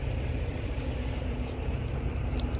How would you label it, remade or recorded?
remade